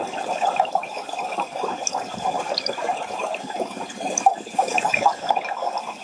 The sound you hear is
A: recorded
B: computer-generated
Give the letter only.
B